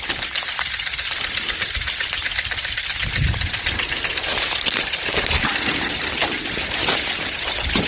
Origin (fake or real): real